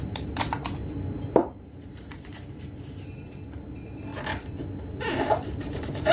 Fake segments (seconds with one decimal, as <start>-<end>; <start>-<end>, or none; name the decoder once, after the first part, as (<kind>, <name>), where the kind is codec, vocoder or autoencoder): 0.0-0.8 (vocoder, BigVGAN v2); 1.6-4.1; 5.2-6.1